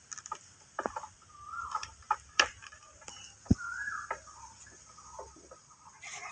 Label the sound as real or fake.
real